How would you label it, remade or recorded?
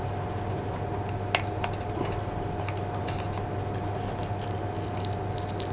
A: recorded